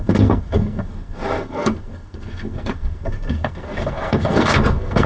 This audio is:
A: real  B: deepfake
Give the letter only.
B